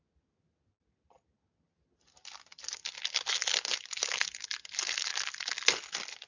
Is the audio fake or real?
real